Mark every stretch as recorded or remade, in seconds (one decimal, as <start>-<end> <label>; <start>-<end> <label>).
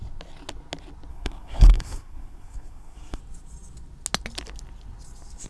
0.0-1.1 recorded; 1.1-3.2 remade; 3.2-5.5 recorded